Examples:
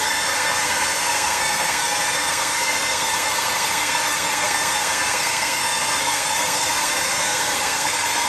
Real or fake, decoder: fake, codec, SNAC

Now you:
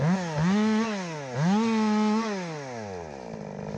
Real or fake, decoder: real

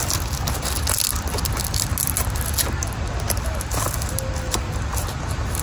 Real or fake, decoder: real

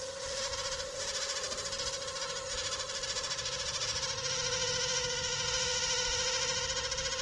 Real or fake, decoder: real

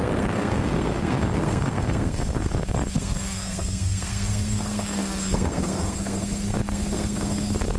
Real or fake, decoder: fake, codec, SNAC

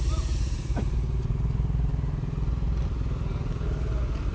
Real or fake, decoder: real